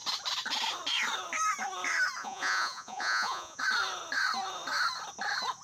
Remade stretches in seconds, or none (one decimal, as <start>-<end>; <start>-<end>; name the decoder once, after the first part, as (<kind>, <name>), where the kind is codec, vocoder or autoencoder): 2.2-3.6 (vocoder, Vocos)